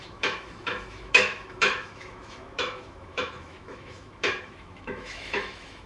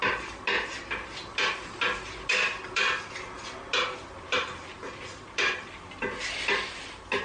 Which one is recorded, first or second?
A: second